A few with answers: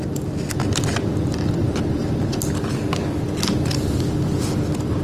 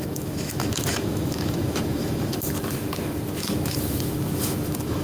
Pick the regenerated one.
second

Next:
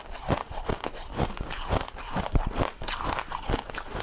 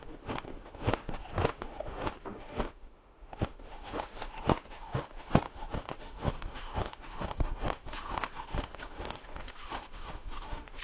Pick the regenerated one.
second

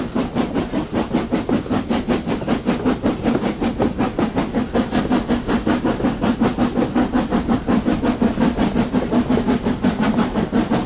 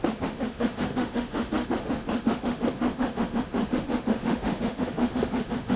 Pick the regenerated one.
second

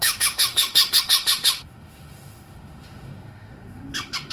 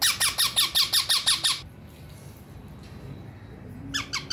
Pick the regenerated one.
first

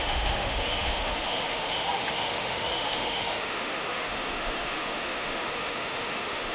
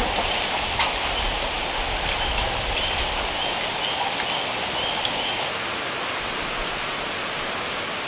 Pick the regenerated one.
first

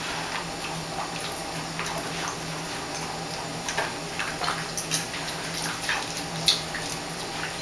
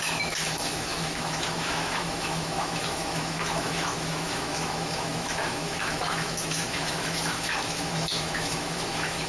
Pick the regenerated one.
second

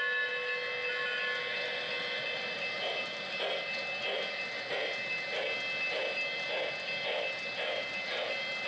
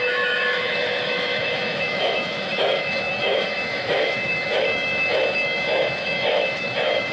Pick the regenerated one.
second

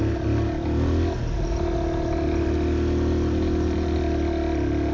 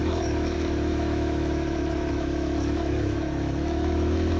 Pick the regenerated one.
second